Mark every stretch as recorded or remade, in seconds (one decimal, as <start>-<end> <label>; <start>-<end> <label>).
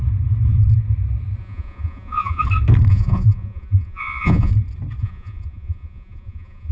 0.0-1.4 recorded; 1.4-2.4 remade; 2.4-2.9 recorded; 2.9-4.5 remade; 4.5-5.0 recorded; 5.0-6.7 remade